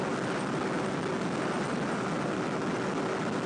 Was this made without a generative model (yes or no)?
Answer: yes